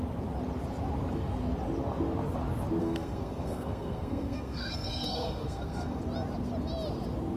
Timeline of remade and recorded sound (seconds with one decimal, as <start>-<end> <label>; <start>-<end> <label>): 0.0-2.8 recorded; 2.8-6.0 remade; 6.0-7.4 recorded

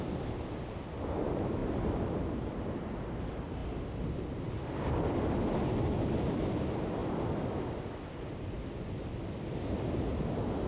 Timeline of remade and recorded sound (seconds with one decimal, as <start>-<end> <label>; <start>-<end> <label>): 0.0-10.7 recorded

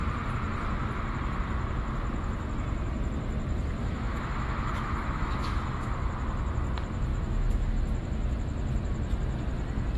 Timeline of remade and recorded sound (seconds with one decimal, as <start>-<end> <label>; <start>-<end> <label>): 0.0-3.8 recorded; 3.8-5.9 remade; 5.9-7.1 recorded; 7.1-7.7 remade; 7.7-10.0 recorded

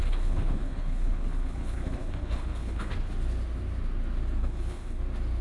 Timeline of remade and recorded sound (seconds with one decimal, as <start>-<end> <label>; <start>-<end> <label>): 0.0-2.9 remade; 2.9-4.4 recorded; 4.4-5.0 remade; 5.0-5.4 recorded

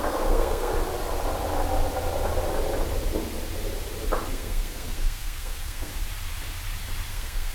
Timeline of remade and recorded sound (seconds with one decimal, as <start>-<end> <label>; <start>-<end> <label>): 0.0-0.7 remade; 0.7-4.3 recorded; 4.3-5.9 remade; 5.9-7.1 recorded; 7.1-7.5 remade

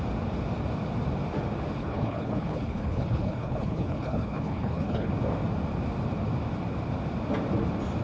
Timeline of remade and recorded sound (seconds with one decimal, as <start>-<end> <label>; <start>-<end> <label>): 0.0-1.8 recorded; 1.8-5.1 remade; 5.1-8.0 recorded

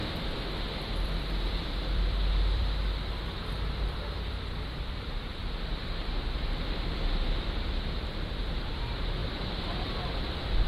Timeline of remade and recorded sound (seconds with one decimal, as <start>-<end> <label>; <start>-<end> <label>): 0.0-0.7 recorded; 0.7-10.7 remade